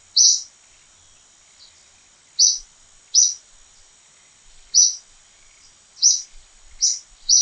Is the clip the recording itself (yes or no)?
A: yes